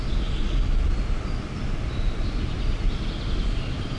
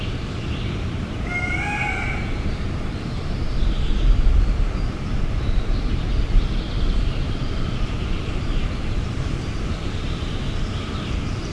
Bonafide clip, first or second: first